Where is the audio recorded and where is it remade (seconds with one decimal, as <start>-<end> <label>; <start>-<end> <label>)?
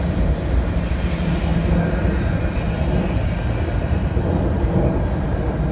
0.0-5.7 recorded